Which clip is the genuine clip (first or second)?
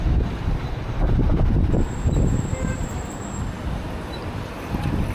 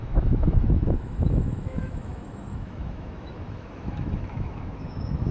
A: first